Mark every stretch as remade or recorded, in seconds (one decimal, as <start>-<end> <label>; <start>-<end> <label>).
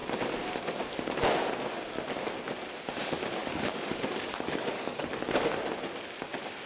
0.0-3.4 recorded; 3.4-5.1 remade; 5.1-6.7 recorded